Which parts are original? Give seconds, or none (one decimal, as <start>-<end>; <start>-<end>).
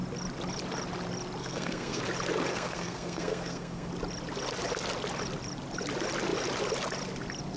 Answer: 0.0-1.4; 2.0-2.5; 3.9-7.6